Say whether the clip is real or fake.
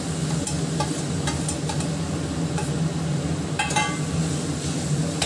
real